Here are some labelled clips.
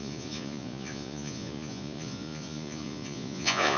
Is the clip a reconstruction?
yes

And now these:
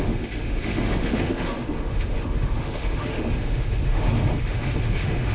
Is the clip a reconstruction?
yes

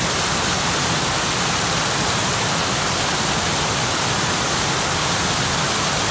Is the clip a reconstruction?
no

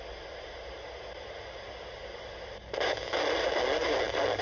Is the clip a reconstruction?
no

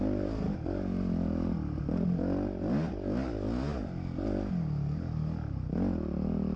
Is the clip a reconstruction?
no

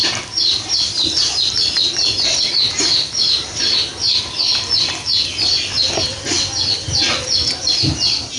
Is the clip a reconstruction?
no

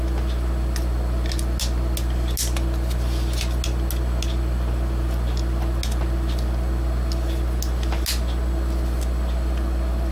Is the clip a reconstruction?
no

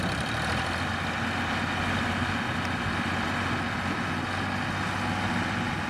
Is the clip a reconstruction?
no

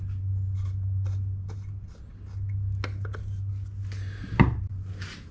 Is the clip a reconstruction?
no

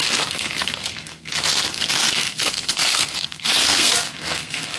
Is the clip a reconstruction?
yes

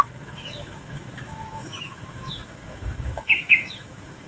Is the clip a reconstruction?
yes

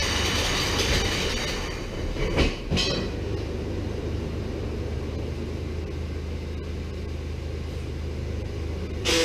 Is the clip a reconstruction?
no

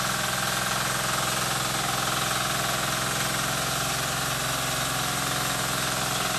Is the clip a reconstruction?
no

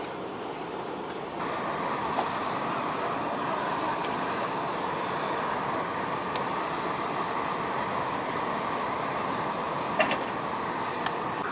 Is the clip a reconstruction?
yes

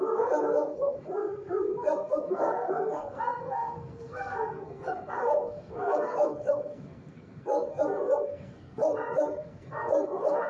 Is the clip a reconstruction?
yes